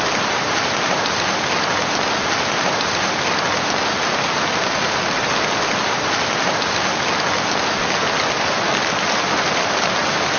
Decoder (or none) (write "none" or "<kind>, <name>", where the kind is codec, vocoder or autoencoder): none